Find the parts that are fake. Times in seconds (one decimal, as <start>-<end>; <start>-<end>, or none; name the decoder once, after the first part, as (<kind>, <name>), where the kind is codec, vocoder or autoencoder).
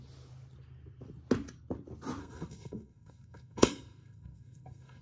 2.2-5.0 (codec, SNAC)